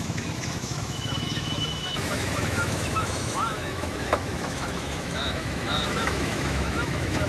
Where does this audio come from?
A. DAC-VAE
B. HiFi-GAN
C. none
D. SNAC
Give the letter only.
A